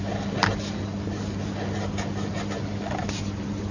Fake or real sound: real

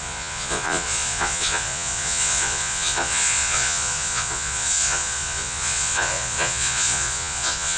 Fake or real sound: fake